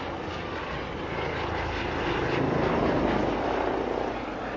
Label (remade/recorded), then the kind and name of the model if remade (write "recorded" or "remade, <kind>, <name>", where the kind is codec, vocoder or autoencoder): recorded